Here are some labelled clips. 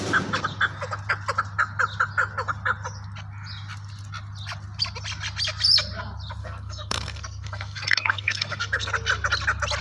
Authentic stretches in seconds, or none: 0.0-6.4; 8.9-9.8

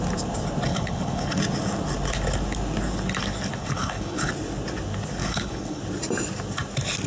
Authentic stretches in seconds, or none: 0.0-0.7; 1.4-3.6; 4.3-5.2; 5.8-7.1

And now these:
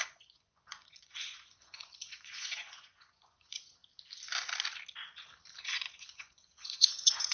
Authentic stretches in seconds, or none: 3.8-5.6

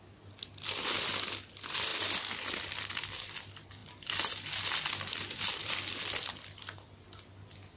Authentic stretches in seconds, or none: 0.0-7.8